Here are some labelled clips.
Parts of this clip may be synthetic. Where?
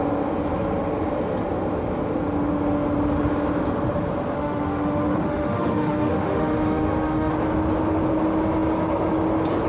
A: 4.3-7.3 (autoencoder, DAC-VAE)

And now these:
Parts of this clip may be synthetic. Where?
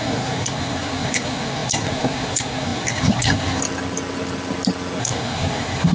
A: 0.0-3.6 (codec, SNAC); 5.0-5.9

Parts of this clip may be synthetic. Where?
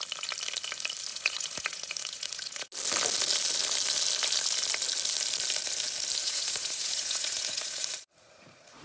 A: 1.1-2.7 (vocoder, Vocos); 6.2-8.8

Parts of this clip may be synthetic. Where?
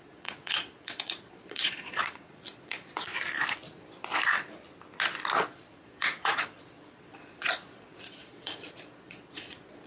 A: 0.0-3.1 (vocoder, Vocos); 5.5-9.9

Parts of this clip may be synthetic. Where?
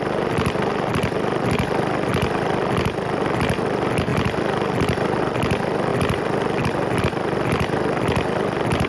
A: none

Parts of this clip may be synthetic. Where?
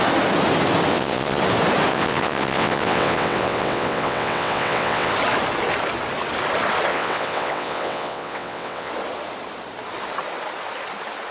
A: 0.9-1.4 (vocoder, WaveNeXt); 1.9-5.1; 6.9-8.9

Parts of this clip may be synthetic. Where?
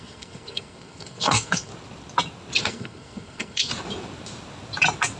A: 0.0-1.7 (codec, SNAC); 2.6-3.7